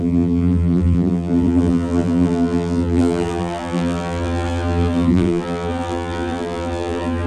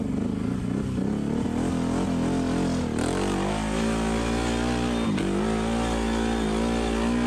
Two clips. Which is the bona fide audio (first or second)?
second